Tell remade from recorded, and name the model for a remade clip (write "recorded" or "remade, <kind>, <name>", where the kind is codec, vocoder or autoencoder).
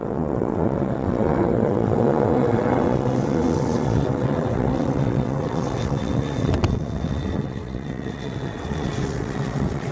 remade, vocoder, WaveNeXt